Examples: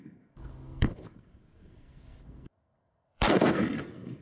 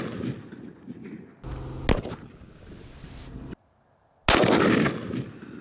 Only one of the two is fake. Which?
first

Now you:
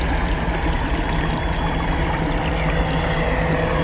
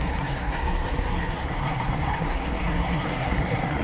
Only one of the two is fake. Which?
second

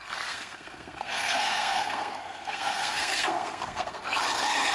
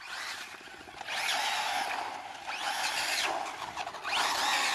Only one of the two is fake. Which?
first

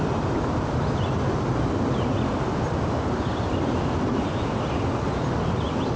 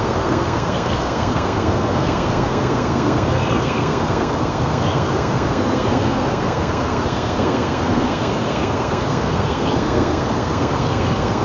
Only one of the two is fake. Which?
second